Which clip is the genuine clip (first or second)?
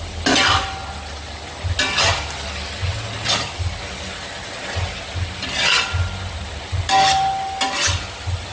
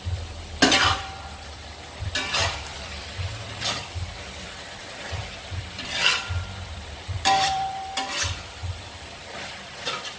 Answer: first